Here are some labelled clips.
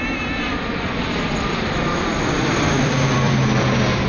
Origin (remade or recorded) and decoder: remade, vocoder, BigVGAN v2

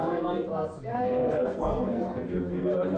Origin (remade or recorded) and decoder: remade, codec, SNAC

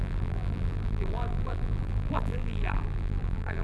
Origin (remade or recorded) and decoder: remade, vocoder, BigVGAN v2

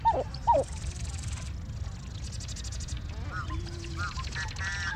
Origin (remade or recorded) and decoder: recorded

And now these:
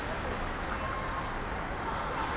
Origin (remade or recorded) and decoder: recorded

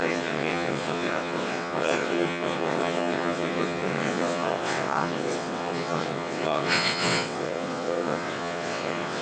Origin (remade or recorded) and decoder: remade, vocoder, WaveNeXt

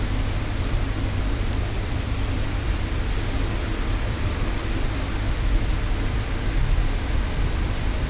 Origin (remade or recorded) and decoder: remade, vocoder, BigVGAN v2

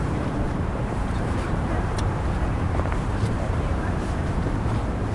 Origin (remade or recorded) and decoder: remade, vocoder, BigVGAN v2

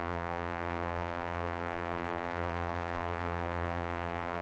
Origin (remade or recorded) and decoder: remade, vocoder, BigVGAN v2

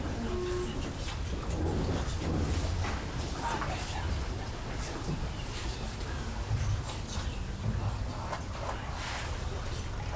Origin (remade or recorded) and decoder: recorded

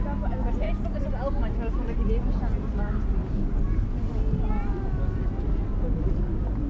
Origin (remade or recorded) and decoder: recorded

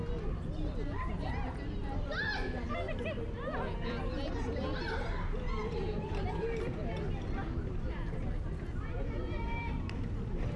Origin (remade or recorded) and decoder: recorded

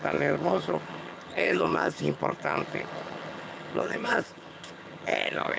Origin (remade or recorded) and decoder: remade, vocoder, HiFi-GAN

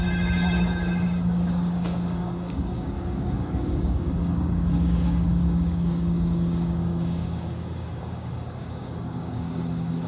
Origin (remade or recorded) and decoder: remade, codec, DAC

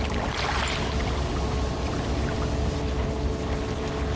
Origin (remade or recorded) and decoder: recorded